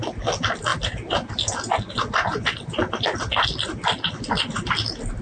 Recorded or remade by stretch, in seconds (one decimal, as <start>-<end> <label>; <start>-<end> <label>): 0.0-5.2 recorded